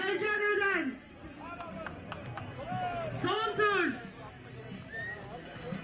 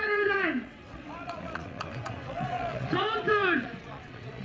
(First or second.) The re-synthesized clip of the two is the second